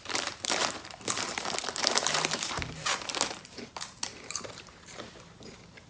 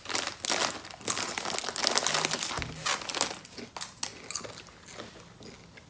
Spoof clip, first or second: first